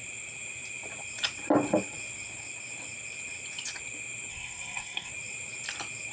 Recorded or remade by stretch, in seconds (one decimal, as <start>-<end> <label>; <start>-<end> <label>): 0.0-4.3 recorded; 4.3-5.1 remade; 5.1-6.1 recorded